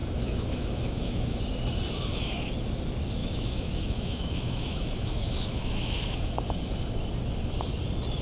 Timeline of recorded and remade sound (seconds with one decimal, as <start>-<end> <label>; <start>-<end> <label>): 0.0-1.4 remade; 1.4-3.2 recorded; 3.2-6.4 remade; 6.4-8.2 recorded